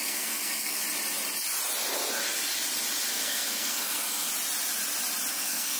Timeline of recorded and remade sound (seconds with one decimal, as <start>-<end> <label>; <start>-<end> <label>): 0.0-0.8 remade; 0.8-3.1 recorded; 3.1-4.3 remade; 4.3-5.3 recorded; 5.3-5.8 remade